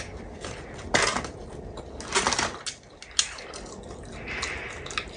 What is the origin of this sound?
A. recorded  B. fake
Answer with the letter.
A